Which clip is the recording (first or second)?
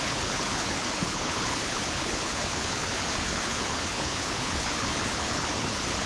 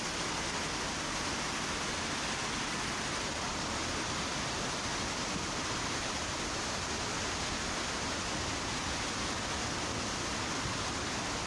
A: second